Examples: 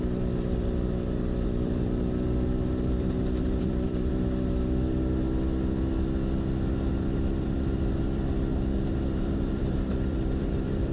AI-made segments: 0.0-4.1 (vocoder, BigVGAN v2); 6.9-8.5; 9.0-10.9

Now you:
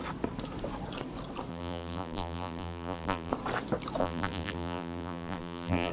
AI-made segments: 1.5-3.3 (vocoder, BigVGAN v2); 4.0-5.9